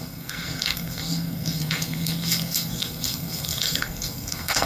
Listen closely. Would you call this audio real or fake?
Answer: fake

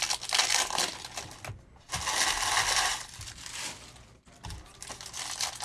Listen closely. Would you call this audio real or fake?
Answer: real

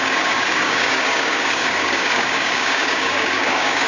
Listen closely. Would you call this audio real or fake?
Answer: fake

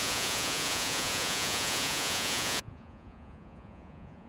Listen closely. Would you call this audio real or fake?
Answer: fake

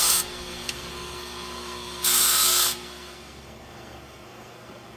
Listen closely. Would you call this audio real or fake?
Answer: fake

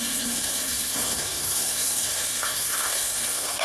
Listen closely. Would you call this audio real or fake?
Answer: fake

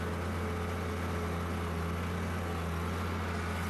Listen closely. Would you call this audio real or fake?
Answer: real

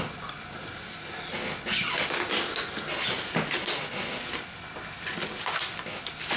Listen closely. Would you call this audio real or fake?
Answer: real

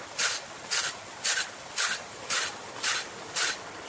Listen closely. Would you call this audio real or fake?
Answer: real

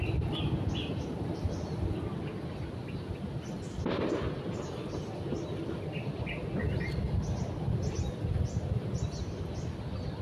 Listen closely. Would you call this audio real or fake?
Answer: real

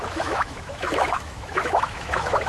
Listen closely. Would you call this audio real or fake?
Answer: fake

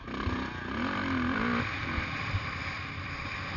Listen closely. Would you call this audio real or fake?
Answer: real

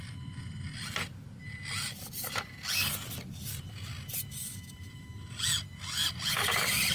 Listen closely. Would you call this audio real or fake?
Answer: real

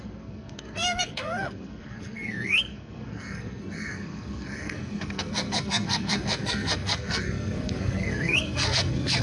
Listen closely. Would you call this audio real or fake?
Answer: fake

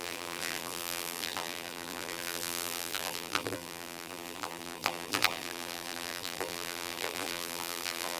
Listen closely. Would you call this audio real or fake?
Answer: fake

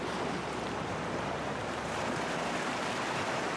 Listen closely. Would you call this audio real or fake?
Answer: real